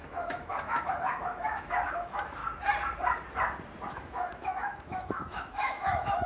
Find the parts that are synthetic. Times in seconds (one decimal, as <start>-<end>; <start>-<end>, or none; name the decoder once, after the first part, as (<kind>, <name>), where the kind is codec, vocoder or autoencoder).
0.0-2.4 (autoencoder, DAC-VAE); 3.9-6.3